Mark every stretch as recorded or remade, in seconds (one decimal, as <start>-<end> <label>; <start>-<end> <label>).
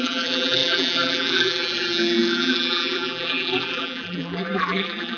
0.0-5.2 remade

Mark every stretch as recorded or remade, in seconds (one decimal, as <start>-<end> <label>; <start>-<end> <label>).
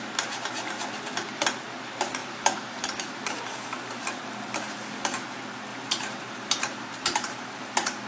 0.0-2.2 recorded; 2.2-3.4 remade; 3.4-5.7 recorded; 5.7-8.1 remade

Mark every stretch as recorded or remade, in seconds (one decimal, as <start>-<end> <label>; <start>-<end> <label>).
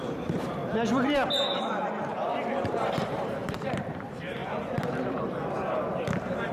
0.0-0.6 remade; 0.6-3.0 recorded; 3.0-4.4 remade; 4.4-6.1 recorded; 6.1-6.5 remade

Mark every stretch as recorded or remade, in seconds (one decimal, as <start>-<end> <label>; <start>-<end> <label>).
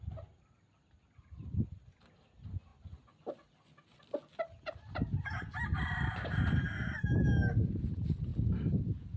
0.0-9.2 recorded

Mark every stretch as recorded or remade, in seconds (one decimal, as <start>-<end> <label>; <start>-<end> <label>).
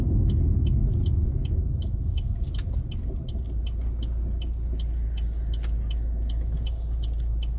0.0-0.8 recorded; 0.8-2.0 remade; 2.0-7.6 recorded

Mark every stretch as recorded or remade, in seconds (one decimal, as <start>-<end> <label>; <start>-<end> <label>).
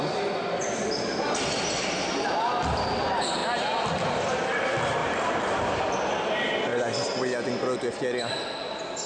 0.0-5.0 recorded; 5.0-5.8 remade; 5.8-9.1 recorded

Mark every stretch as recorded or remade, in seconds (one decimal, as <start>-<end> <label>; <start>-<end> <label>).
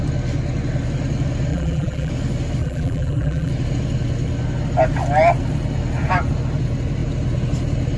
0.0-1.5 recorded; 1.5-2.1 remade; 2.1-2.6 recorded; 2.6-3.5 remade; 3.5-8.0 recorded